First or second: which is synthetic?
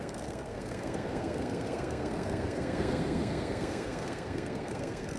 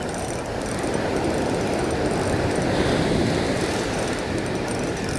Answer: first